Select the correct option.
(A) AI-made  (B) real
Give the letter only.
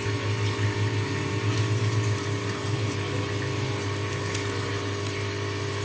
B